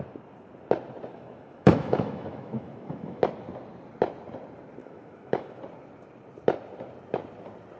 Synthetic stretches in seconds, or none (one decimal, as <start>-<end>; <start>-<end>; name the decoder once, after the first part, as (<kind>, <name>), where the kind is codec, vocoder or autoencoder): 1.1-3.2 (autoencoder, DAC-VAE); 4.8-5.6